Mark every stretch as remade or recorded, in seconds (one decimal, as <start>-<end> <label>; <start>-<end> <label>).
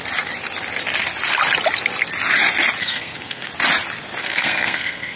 0.0-2.8 recorded; 2.8-3.5 remade; 3.5-4.2 recorded; 4.2-5.2 remade